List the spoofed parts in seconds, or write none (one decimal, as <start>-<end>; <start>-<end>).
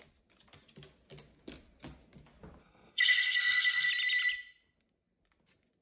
2.6-3.9